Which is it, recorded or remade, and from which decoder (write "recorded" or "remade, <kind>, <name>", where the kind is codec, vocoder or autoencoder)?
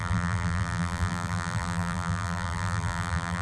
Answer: remade, vocoder, BigVGAN v2